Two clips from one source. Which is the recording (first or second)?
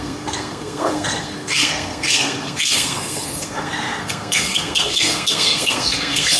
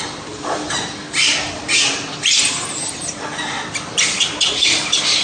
second